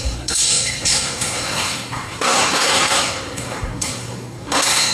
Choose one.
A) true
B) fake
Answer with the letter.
B